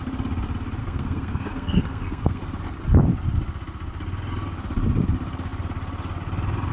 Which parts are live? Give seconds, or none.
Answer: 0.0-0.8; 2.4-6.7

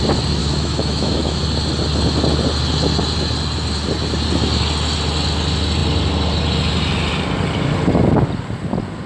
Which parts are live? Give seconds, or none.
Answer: 0.0-0.4; 1.4-9.1

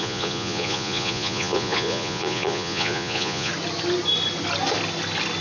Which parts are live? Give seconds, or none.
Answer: 3.5-5.4

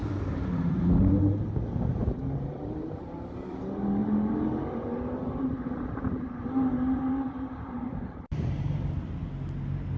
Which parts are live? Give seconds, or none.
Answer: 1.4-1.9; 3.6-4.0; 8.9-10.0